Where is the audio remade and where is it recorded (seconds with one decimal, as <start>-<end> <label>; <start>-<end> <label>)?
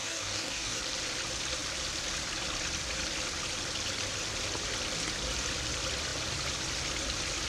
0.0-0.8 remade; 0.8-7.5 recorded